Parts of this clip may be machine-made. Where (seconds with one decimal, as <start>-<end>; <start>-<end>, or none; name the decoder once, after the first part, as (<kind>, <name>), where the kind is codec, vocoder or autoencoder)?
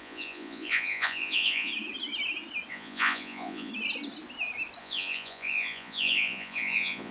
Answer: 0.0-1.7 (vocoder, Vocos); 2.7-3.7; 4.8-7.1